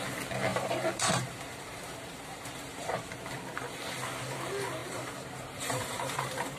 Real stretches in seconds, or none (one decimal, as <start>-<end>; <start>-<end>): 0.0-0.5; 3.1-4.8